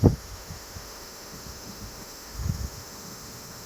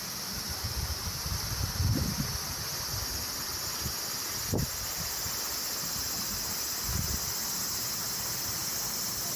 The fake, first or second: first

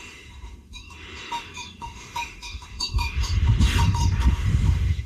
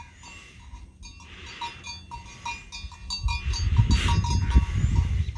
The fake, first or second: first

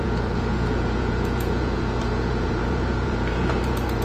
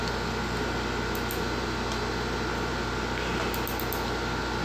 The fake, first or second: first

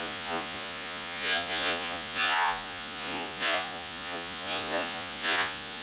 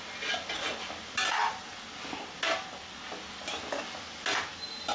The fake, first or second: first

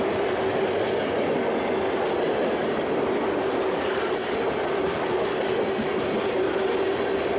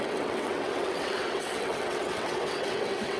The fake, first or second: second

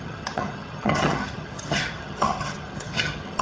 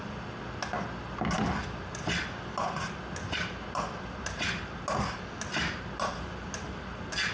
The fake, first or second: first